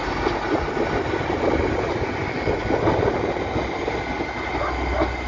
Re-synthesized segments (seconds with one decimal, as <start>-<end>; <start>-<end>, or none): none